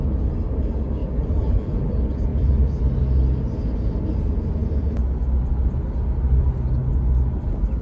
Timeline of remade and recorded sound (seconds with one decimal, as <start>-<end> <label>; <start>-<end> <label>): 0.0-1.0 recorded; 1.0-1.9 remade; 1.9-2.3 recorded; 2.3-2.8 remade; 2.8-7.8 recorded